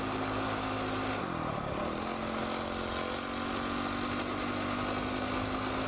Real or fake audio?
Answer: real